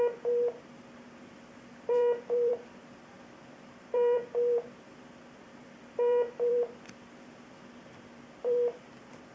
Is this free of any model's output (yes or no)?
no